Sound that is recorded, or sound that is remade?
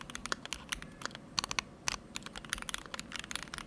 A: recorded